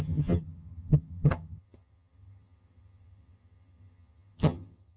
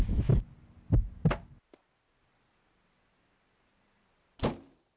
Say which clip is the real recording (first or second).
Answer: second